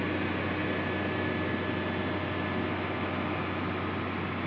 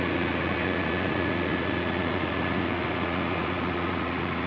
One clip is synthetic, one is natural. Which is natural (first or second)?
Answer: first